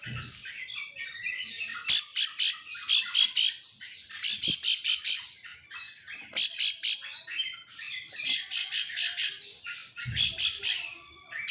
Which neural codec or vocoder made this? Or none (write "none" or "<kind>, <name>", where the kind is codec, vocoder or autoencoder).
vocoder, BigVGAN v2